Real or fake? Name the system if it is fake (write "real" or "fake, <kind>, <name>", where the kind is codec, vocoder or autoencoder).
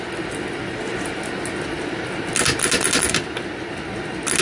real